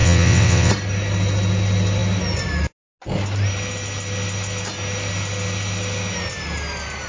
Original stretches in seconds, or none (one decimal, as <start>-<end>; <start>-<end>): 0.7-7.1